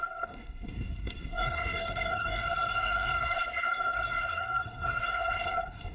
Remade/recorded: remade